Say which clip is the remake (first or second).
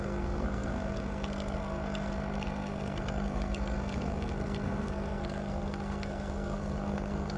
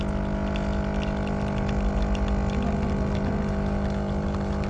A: first